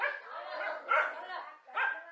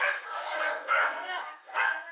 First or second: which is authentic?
first